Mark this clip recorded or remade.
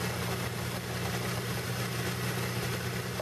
recorded